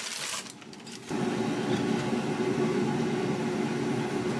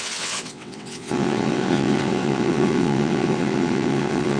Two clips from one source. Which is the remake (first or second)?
second